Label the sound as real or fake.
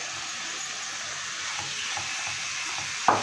real